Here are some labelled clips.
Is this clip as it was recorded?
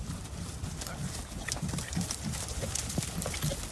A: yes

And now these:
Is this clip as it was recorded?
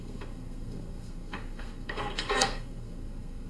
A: no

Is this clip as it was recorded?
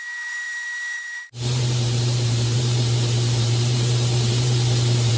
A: no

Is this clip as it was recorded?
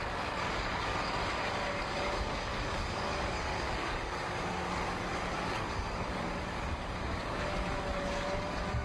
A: no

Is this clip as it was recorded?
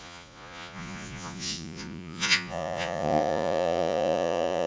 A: no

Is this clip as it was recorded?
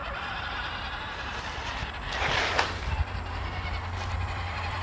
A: no